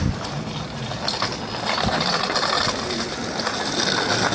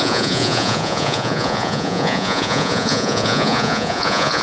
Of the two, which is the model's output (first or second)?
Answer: second